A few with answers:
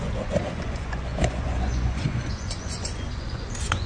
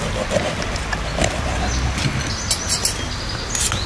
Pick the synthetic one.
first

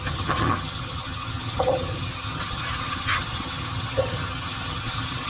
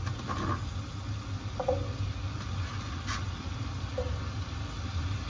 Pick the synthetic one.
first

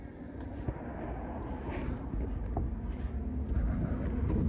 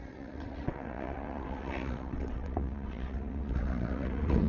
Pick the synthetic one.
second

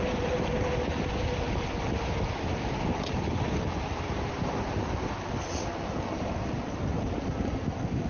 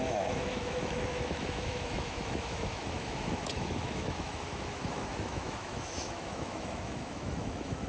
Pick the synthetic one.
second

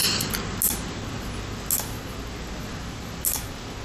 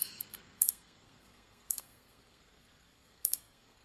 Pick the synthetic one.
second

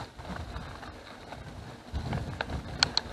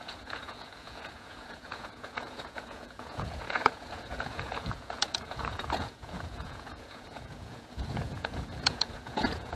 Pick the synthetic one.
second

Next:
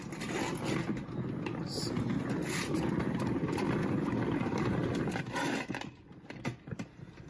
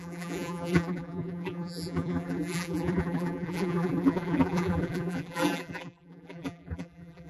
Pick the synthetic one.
second